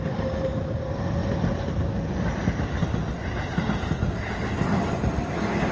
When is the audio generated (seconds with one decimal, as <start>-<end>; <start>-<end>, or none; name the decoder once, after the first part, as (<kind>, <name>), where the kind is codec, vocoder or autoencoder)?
none